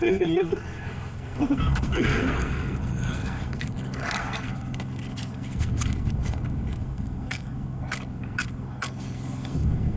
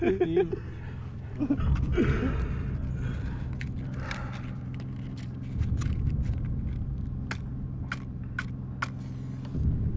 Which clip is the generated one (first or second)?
first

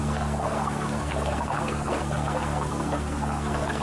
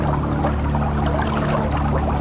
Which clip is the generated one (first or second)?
first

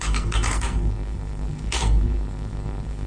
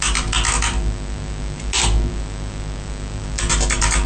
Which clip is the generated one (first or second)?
first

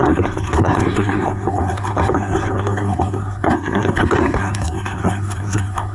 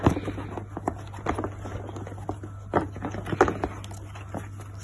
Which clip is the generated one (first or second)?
first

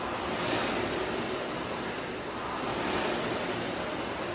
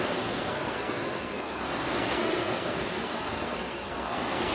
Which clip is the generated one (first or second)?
second